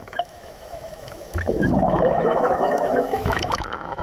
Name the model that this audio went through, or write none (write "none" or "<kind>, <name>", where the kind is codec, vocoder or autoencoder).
autoencoder, DAC-VAE